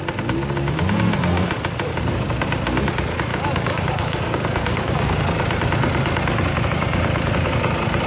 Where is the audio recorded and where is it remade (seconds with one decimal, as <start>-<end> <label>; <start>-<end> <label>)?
0.0-3.3 recorded; 3.3-5.2 remade; 5.2-8.1 recorded